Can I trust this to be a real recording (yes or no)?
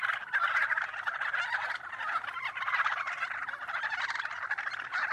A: yes